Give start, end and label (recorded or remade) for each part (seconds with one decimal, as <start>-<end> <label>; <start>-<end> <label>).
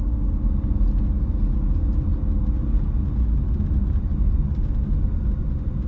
0.0-5.9 recorded